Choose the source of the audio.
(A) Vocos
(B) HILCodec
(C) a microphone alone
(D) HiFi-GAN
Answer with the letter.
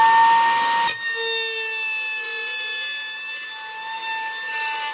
C